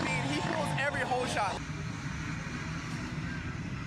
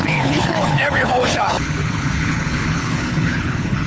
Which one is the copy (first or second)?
second